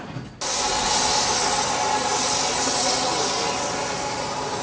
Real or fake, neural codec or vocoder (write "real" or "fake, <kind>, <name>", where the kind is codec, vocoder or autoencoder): real